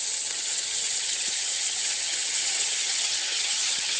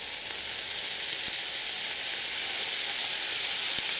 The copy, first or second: first